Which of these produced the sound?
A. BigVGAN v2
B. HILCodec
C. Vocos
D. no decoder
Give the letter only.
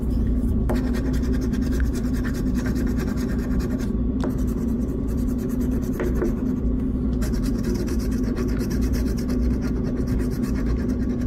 A